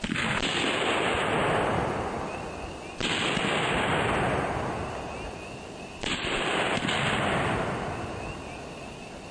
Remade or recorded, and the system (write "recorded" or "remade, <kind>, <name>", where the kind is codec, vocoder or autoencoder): recorded